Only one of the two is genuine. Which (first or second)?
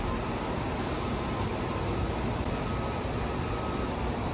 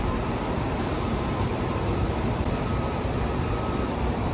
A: first